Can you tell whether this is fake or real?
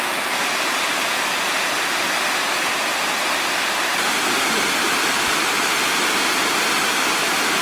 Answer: real